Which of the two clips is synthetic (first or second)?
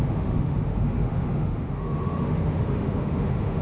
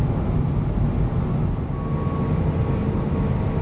first